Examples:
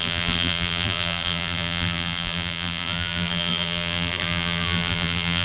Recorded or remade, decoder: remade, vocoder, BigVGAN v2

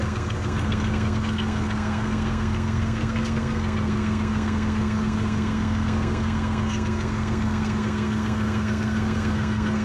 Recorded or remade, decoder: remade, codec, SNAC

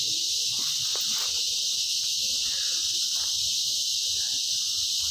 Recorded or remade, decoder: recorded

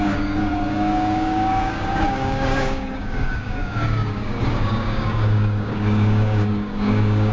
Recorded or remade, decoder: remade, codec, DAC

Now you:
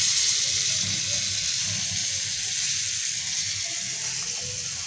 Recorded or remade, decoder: recorded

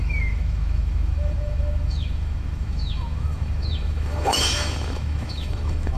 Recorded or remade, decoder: remade, autoencoder, DAC-VAE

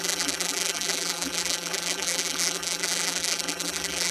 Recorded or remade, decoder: remade, vocoder, BigVGAN v2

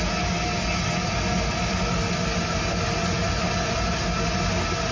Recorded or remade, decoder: recorded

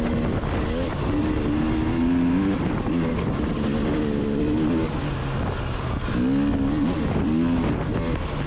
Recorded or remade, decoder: recorded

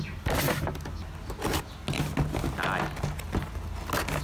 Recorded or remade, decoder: recorded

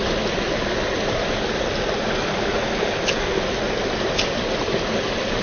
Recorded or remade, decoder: recorded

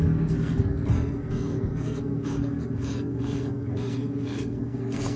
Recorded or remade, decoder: remade, codec, SNAC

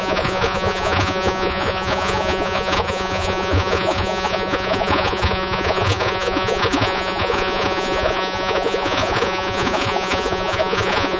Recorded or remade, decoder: remade, vocoder, Vocos